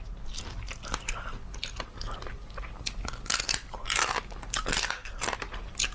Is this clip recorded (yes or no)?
yes